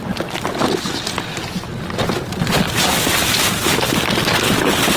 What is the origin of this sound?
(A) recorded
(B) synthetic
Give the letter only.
A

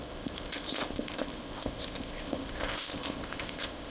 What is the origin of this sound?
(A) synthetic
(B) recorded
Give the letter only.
A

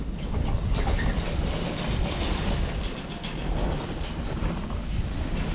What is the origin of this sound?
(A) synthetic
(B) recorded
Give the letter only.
B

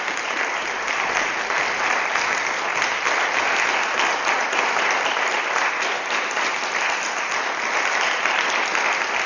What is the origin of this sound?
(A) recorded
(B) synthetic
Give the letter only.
A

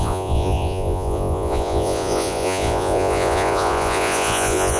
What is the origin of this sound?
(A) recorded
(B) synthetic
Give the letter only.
B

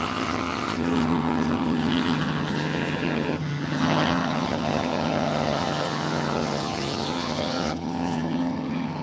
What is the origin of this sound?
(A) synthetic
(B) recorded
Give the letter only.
A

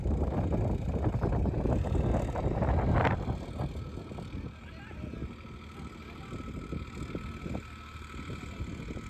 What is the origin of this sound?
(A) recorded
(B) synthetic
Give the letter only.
A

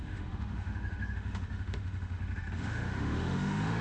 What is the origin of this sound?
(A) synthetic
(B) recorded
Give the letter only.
A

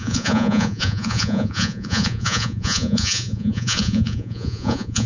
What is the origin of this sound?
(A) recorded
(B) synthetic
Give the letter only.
B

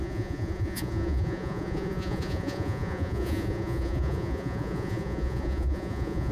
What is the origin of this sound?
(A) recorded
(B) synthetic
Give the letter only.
B